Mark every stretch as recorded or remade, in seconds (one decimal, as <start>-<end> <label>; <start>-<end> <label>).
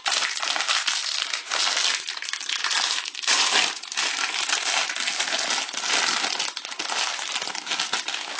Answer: 0.0-8.4 recorded